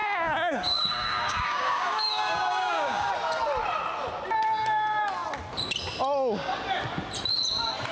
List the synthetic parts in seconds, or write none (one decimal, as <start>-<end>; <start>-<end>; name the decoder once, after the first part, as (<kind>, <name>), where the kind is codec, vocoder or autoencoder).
0.0-3.1 (codec, DAC)